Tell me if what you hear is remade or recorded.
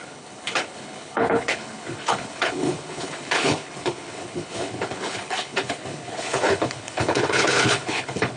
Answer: remade